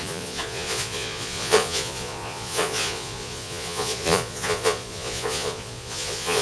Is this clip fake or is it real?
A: fake